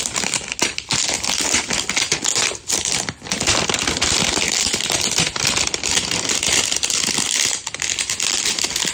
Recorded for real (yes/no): yes